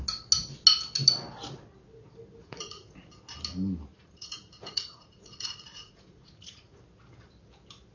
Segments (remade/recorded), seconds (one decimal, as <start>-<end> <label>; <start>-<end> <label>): 0.0-2.4 recorded; 2.4-3.1 remade; 3.1-3.9 recorded; 3.9-6.8 remade; 6.8-7.9 recorded